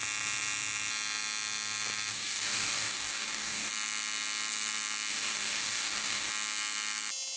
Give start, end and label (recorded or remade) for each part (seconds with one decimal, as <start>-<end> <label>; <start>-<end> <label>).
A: 0.0-2.1 recorded; 2.1-3.7 remade; 3.7-5.1 recorded; 5.1-6.3 remade; 6.3-7.4 recorded